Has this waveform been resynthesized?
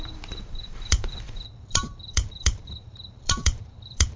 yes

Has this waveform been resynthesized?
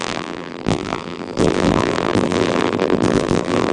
yes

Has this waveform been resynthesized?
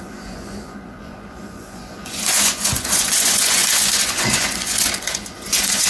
yes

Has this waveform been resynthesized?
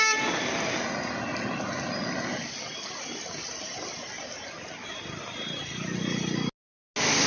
no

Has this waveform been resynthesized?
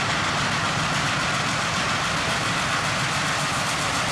no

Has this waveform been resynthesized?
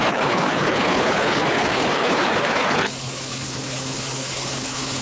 yes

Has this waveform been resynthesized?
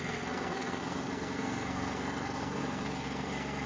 yes